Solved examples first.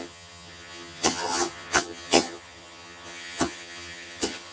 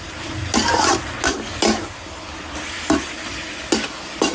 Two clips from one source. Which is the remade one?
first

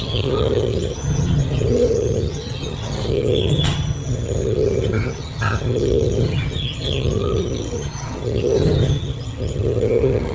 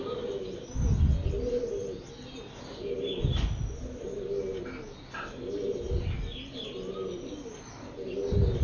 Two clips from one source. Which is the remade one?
first